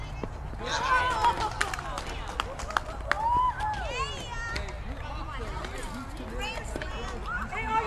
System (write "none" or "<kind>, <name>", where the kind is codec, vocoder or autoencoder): none